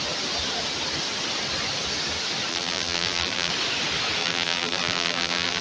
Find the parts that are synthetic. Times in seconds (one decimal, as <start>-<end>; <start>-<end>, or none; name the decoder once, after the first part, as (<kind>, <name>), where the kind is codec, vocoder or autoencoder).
2.5-3.5 (vocoder, BigVGAN v2); 4.2-5.6